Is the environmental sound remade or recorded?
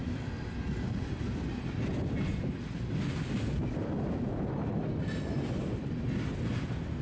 recorded